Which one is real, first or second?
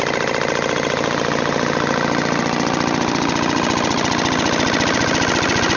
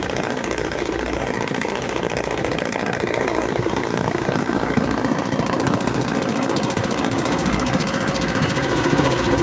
first